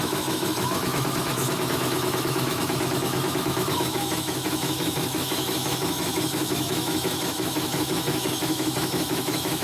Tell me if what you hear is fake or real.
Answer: fake